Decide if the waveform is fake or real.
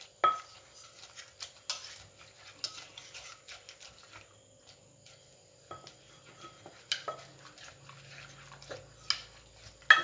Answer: real